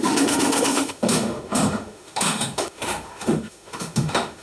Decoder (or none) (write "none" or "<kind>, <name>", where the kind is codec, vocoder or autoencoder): autoencoder, DAC-VAE